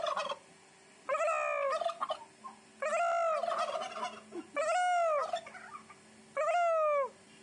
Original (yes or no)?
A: yes